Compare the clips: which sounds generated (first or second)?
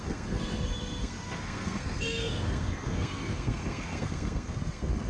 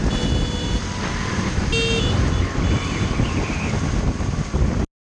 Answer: first